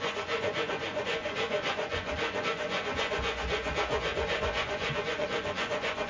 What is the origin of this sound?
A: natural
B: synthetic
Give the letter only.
B